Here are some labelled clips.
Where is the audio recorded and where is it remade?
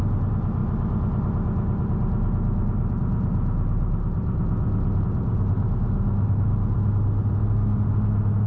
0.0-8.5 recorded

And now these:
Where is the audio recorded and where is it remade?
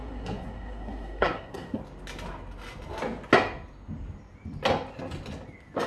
0.0-1.8 remade; 1.8-5.9 recorded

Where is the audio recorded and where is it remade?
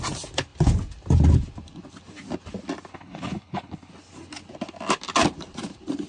0.0-2.9 recorded; 2.9-3.9 remade; 3.9-6.1 recorded